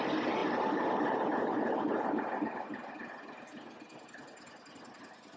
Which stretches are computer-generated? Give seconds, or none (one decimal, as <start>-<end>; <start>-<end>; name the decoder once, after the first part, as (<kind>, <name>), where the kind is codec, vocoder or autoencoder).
none